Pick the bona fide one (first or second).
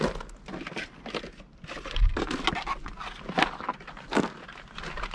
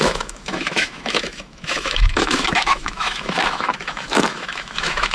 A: first